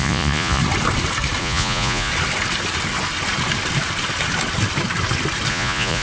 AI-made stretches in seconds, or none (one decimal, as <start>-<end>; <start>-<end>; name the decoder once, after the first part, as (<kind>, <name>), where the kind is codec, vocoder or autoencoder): 0.0-0.6 (vocoder, Vocos); 1.4-2.1; 5.5-6.0